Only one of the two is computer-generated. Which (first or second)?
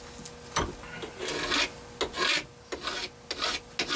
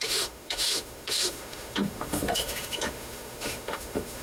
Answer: second